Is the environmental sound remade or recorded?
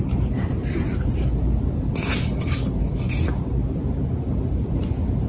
recorded